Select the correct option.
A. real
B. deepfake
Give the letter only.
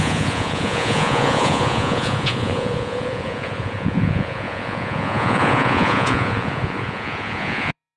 B